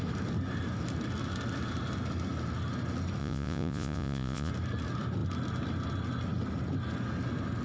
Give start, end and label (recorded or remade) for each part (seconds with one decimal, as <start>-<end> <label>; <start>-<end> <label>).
0.0-3.2 recorded; 3.2-4.5 remade; 4.5-7.6 recorded